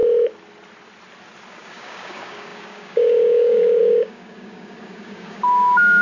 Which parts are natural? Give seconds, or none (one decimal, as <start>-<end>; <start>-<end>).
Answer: 0.0-1.5